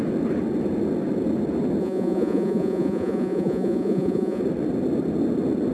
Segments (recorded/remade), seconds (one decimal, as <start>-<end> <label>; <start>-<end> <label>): 0.0-1.8 recorded; 1.8-4.4 remade; 4.4-5.7 recorded